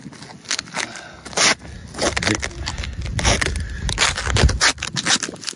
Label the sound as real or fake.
real